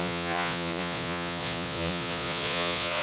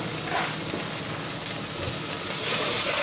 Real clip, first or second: second